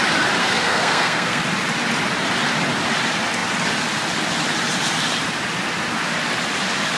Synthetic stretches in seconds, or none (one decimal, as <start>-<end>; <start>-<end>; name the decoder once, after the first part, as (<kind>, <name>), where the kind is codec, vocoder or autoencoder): 0.4-1.4 (codec, SNAC)